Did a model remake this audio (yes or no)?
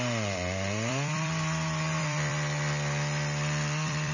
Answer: yes